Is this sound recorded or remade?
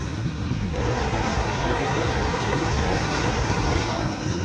remade